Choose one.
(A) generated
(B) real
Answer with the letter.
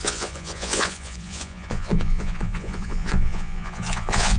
A